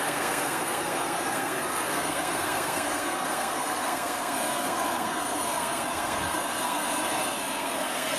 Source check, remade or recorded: remade